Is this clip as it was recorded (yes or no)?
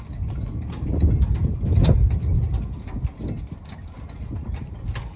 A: yes